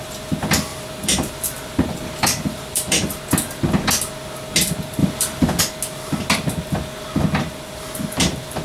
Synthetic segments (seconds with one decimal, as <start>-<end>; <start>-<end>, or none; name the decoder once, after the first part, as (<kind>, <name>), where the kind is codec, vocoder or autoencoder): 0.7-3.2 (vocoder, BigVGAN v2); 5.0-5.6